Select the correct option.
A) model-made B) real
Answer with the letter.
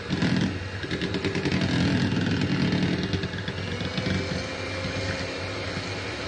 B